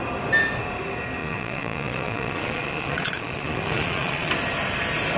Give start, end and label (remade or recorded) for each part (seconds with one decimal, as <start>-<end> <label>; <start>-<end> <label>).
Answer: 0.0-1.2 recorded; 1.2-4.3 remade; 4.3-5.2 recorded